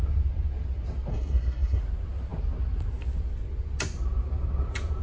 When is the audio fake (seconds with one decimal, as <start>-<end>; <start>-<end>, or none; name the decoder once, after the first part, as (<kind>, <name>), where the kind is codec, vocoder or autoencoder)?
1.1-1.8 (codec, SNAC)